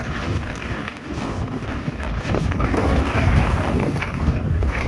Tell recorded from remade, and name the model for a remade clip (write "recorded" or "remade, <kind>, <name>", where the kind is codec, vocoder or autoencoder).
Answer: remade, codec, DAC